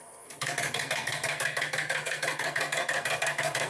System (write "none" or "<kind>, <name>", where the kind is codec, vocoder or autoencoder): codec, SNAC